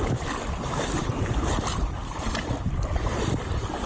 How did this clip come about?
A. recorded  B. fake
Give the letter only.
A